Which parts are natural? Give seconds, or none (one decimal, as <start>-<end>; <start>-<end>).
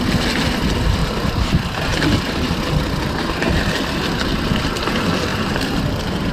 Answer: 0.0-1.0; 1.5-1.9; 2.5-5.3